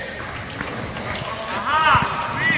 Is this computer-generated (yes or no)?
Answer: no